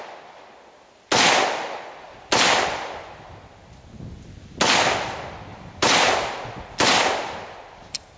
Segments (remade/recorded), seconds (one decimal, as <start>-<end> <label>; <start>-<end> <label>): 0.0-5.5 recorded; 5.5-6.3 remade; 6.3-8.2 recorded